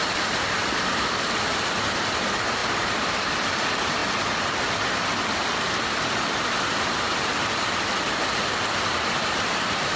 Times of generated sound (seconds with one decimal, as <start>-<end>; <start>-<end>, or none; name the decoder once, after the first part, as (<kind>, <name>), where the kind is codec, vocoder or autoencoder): 0.0-1.7 (vocoder, BigVGAN v2); 2.6-3.6